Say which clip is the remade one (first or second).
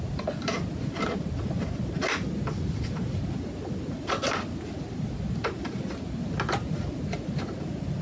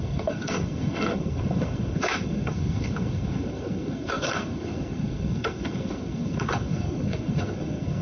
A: second